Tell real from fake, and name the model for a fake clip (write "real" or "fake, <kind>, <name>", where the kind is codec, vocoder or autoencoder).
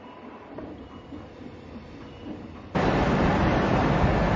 real